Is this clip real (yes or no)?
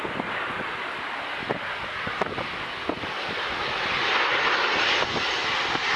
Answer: yes